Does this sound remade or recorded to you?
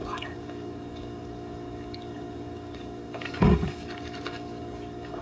remade